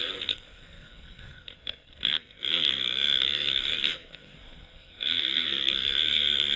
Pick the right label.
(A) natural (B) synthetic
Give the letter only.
B